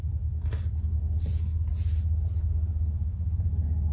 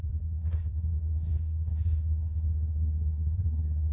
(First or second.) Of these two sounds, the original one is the first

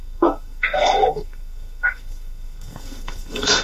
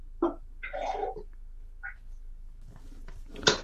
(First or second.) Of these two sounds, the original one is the second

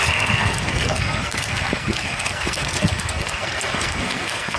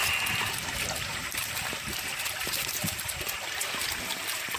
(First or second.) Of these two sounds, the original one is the second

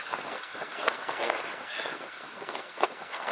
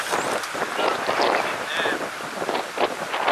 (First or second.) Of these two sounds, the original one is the second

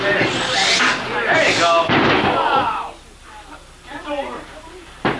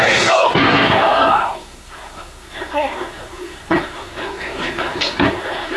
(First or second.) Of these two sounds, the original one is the first